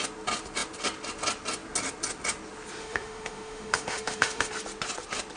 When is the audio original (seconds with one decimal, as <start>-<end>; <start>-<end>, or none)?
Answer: 0.0-2.8; 4.5-5.4